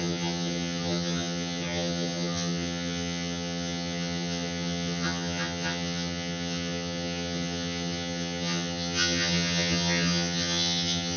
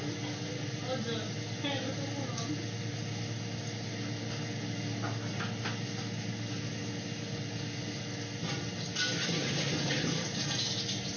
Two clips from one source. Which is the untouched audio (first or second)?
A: second